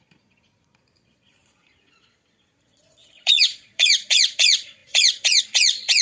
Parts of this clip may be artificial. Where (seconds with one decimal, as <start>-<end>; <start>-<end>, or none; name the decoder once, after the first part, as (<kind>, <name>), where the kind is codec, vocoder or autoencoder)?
0.0-6.0 (vocoder, Vocos)